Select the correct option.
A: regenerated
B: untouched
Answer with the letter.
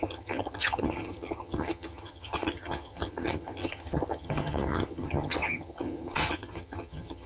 A